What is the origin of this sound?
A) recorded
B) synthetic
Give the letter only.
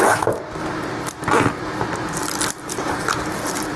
A